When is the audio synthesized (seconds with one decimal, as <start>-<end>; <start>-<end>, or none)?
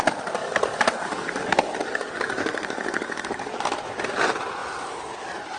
0.4-3.6